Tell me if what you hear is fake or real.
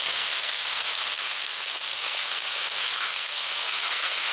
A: fake